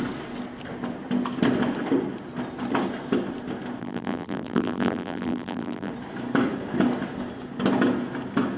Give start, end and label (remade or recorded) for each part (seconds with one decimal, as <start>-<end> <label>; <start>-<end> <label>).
0.0-3.8 recorded; 3.8-5.9 remade; 5.9-8.6 recorded